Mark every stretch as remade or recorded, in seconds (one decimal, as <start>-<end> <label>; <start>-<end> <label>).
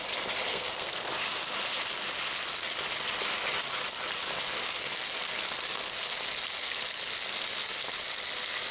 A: 0.0-0.5 recorded; 0.5-1.1 remade; 1.1-8.7 recorded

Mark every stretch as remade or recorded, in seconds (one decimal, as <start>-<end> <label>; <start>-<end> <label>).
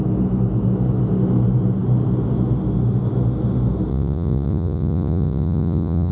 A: 0.0-3.9 recorded; 3.9-6.1 remade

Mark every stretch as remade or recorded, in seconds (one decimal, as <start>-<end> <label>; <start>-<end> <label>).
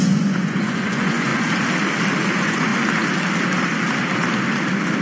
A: 0.0-1.3 remade; 1.3-2.3 recorded; 2.3-2.7 remade; 2.7-5.0 recorded